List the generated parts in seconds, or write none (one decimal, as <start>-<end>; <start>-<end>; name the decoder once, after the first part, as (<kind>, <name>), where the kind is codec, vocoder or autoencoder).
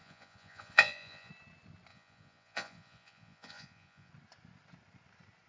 0.0-1.3 (vocoder, Vocos); 1.9-4.1